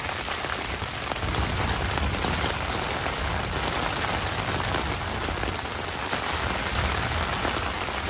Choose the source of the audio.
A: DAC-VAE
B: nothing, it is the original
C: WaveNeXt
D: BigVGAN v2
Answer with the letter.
B